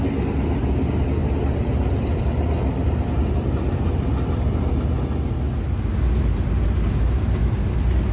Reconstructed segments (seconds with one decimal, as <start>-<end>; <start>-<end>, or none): 1.2-4.7